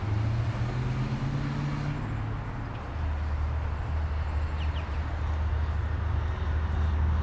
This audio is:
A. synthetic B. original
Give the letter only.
B